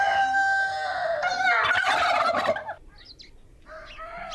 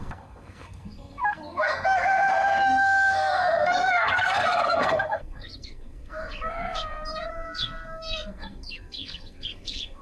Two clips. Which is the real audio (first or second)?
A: first